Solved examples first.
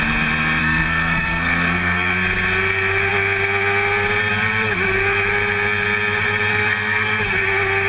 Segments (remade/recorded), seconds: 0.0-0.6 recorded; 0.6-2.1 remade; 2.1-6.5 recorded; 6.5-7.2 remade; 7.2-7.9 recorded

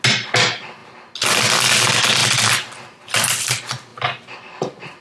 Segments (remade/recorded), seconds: 0.0-5.0 recorded

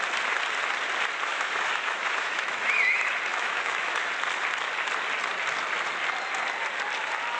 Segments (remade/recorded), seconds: 0.0-1.3 recorded; 1.3-2.7 remade; 2.7-3.3 recorded; 3.3-4.0 remade; 4.0-7.4 recorded

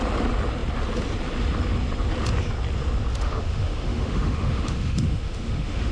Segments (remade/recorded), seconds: 0.0-3.1 recorded; 3.1-5.9 remade

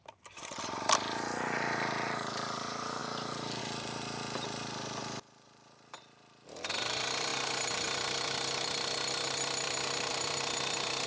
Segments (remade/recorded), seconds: 0.0-11.1 remade